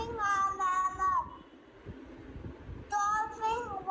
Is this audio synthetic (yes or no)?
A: no